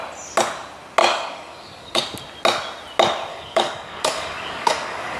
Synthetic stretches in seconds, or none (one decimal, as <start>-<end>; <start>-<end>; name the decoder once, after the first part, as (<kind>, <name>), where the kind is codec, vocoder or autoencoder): 1.0-2.0 (codec, DAC); 3.3-5.2